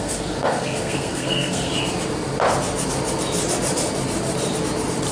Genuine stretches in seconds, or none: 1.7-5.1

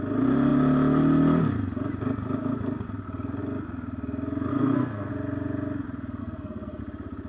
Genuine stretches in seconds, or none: 0.0-4.5; 5.1-6.2; 6.8-7.3

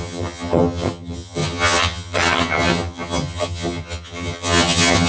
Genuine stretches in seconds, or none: none